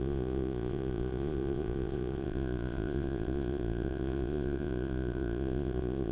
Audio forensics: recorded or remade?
remade